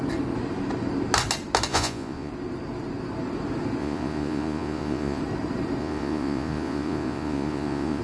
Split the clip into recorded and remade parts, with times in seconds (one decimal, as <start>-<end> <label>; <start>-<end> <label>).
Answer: 0.0-1.7 recorded; 1.7-2.3 remade; 2.3-3.8 recorded; 3.8-5.2 remade; 5.2-5.8 recorded; 5.8-8.0 remade